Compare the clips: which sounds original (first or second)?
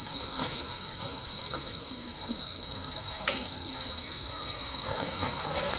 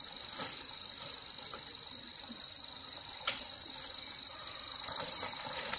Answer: second